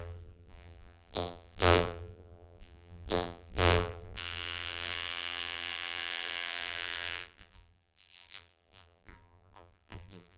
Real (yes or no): no